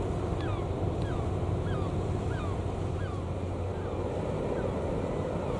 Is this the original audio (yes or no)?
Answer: yes